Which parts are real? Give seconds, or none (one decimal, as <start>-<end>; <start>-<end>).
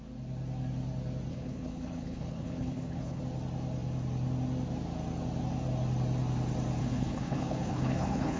0.0-1.3; 3.2-6.8